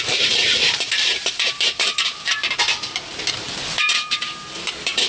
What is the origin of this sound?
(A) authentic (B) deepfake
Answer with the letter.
B